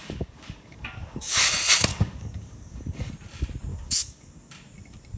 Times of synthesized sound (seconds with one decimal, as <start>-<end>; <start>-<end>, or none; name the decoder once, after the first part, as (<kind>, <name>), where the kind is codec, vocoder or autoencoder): 0.0-1.5 (codec, DAC); 1.9-3.1; 3.7-4.5